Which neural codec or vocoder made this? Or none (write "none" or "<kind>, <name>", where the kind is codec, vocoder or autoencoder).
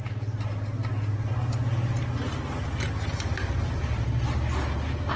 none